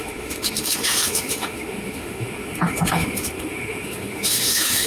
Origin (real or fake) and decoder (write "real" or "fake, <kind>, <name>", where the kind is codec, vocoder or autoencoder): fake, autoencoder, DAC-VAE